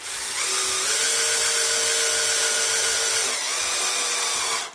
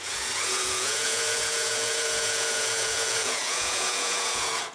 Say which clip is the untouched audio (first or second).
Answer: first